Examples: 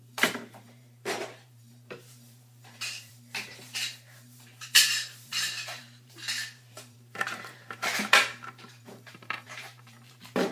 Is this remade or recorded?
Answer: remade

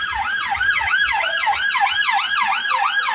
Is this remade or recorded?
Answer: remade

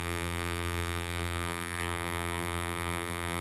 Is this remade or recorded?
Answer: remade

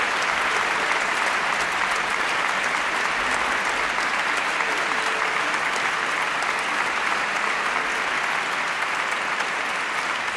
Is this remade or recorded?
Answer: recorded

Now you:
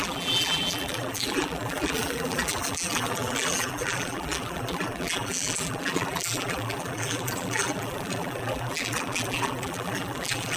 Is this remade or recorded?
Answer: remade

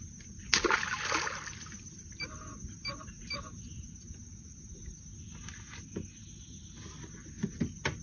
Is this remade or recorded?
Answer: recorded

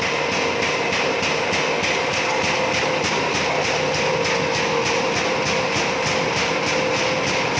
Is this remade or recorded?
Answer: recorded